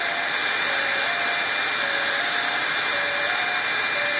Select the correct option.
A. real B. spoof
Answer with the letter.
A